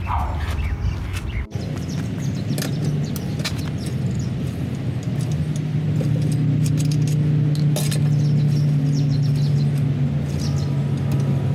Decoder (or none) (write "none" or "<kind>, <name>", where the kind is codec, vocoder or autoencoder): none